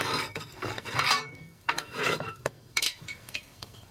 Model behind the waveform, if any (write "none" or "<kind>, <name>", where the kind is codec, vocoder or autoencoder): codec, SNAC